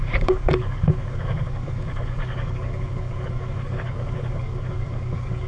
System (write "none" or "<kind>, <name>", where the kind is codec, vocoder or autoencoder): codec, DAC